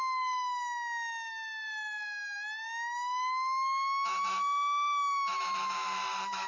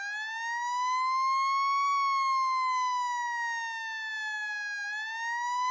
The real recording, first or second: second